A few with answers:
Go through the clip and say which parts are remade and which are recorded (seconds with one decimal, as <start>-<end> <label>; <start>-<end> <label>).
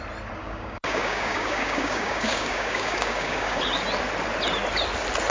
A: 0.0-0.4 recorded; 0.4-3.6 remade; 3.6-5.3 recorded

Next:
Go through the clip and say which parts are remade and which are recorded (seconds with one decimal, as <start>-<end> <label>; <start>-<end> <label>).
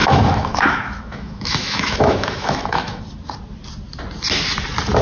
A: 0.0-3.0 remade; 3.0-5.0 recorded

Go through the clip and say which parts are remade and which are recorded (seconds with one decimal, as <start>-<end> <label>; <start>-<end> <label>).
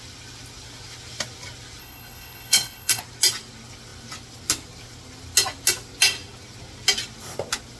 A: 0.0-1.8 recorded; 1.8-3.0 remade; 3.0-7.8 recorded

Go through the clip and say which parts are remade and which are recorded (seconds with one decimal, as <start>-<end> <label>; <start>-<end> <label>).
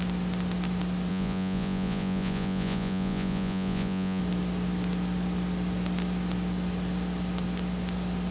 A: 0.0-1.1 recorded; 1.1-4.2 remade; 4.2-8.3 recorded